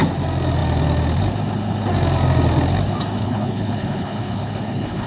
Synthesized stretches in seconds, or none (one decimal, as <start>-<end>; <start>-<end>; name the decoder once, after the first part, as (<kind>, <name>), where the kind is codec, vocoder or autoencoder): 3.2-5.1 (codec, HILCodec)

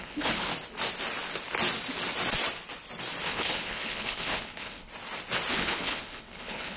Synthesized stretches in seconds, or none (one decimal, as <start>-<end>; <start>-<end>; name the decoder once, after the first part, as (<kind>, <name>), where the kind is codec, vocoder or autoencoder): 0.0-0.5 (codec, HILCodec); 3.2-4.9; 5.5-6.8

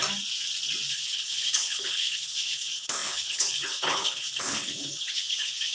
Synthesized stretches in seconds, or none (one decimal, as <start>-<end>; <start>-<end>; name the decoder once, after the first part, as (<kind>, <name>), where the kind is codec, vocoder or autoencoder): 0.9-5.7 (codec, HILCodec)

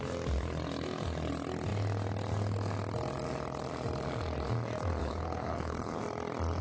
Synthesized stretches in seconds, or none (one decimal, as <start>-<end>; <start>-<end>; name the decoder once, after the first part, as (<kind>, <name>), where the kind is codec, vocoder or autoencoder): 5.0-6.0 (codec, HILCodec)

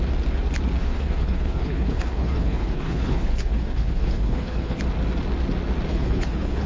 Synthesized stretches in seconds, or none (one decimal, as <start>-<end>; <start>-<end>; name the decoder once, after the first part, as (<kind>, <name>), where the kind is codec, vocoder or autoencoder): 0.8-4.8 (codec, HILCodec); 5.9-6.7

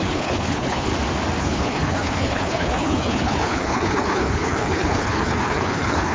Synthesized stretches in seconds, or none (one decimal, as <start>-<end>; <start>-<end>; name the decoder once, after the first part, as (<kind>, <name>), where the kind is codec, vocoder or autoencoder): 0.0-0.9 (codec, HILCodec); 1.4-6.1

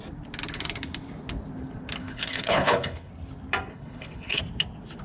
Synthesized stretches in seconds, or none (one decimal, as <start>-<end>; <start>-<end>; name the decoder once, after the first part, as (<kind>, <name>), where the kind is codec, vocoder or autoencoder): 2.0-3.1 (codec, HILCodec); 3.7-4.4